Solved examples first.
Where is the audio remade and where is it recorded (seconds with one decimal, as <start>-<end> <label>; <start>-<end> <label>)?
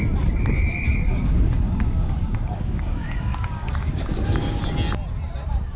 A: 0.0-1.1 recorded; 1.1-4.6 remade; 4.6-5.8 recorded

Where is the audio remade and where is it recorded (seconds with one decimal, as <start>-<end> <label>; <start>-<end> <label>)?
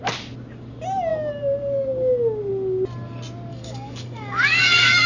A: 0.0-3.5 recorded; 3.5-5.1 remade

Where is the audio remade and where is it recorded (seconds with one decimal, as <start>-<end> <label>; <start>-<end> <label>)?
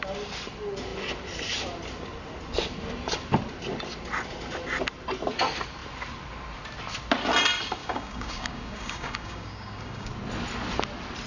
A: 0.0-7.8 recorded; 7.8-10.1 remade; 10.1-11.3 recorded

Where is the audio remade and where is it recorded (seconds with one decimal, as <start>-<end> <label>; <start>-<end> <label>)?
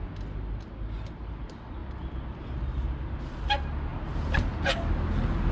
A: 0.0-5.5 recorded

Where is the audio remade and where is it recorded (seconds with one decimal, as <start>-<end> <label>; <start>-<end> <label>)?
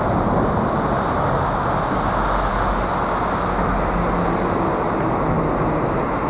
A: 0.0-6.3 recorded